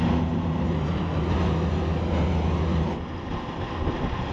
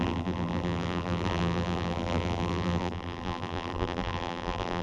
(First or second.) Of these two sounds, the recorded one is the first